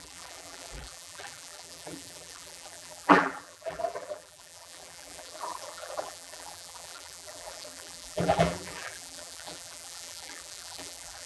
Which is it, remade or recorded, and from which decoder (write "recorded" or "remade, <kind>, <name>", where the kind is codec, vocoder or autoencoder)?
remade, vocoder, BigVGAN v2